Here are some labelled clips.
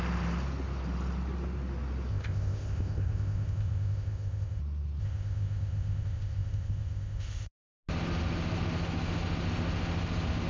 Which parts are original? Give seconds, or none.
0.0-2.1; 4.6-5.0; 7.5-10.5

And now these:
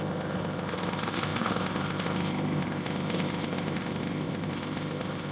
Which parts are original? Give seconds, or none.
none

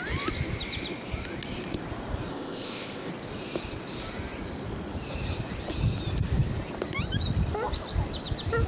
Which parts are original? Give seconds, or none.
0.0-2.3; 3.1-8.7

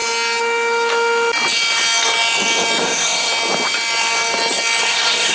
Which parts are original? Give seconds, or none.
0.0-2.8; 3.3-4.8

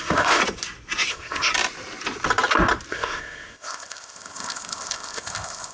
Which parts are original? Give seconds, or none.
0.4-1.1; 1.5-2.9

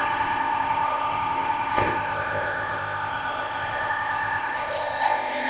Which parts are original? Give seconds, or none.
none

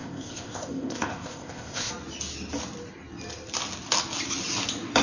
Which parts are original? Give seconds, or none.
1.9-5.0